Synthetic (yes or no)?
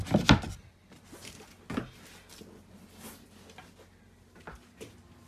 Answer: no